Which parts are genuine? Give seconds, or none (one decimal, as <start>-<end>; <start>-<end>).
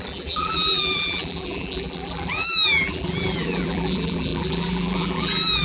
none